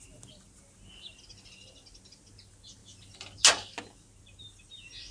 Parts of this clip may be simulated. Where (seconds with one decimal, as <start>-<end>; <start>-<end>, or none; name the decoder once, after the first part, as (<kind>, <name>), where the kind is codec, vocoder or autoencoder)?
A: none

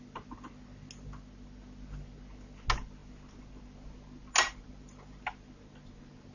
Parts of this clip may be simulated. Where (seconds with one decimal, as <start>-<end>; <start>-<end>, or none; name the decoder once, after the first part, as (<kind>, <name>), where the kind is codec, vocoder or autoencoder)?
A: none

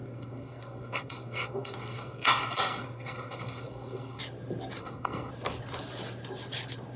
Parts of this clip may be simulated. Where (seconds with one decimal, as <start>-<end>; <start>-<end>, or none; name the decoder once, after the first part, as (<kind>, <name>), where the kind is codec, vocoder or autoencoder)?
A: 0.0-4.2 (codec, SNAC); 4.8-5.3

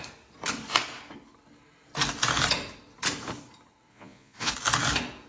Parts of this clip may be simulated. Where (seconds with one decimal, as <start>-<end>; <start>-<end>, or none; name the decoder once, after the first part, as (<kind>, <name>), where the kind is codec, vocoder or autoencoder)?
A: 3.9-4.5 (vocoder, Vocos)

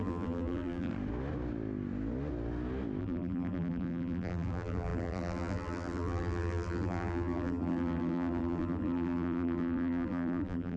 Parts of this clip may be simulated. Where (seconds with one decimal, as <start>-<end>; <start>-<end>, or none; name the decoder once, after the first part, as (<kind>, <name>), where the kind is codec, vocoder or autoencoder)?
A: 0.0-0.9 (vocoder, BigVGAN v2); 3.0-10.8